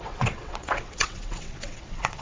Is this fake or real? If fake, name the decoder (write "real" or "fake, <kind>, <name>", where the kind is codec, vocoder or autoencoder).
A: fake, vocoder, WaveNeXt